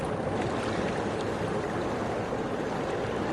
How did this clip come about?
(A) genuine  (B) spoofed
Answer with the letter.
A